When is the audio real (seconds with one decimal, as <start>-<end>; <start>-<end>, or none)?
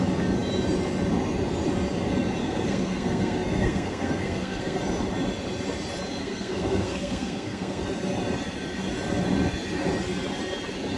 0.0-2.4; 4.8-6.2; 7.8-11.0